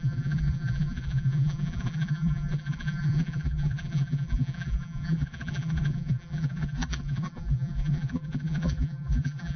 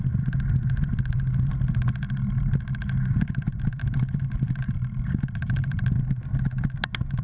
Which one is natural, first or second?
second